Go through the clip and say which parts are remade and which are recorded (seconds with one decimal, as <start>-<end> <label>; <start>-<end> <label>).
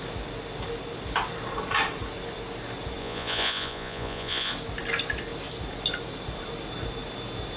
0.0-3.0 recorded; 3.0-4.5 remade; 4.5-7.6 recorded